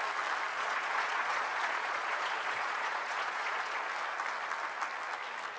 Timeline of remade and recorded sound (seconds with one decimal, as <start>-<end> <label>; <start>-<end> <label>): 0.0-0.5 recorded; 0.5-3.9 remade; 3.9-5.6 recorded